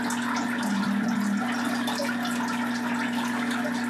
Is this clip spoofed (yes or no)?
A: no